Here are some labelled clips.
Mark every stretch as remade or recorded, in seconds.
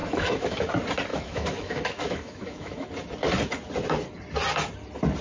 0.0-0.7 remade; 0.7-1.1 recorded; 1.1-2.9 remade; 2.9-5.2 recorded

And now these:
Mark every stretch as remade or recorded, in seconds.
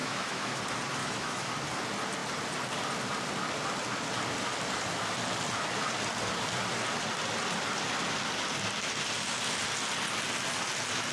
0.0-0.6 remade; 0.6-1.0 recorded; 1.0-1.5 remade; 1.5-11.1 recorded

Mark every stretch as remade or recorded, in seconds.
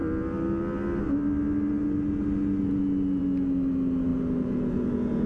0.0-5.3 recorded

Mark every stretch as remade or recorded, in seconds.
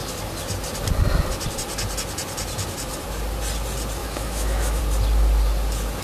0.0-4.0 recorded; 4.0-4.8 remade; 4.8-6.0 recorded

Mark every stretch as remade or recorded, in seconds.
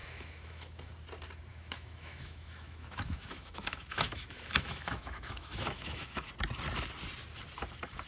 0.0-0.9 remade; 0.9-1.5 recorded; 1.5-6.3 remade; 6.3-8.1 recorded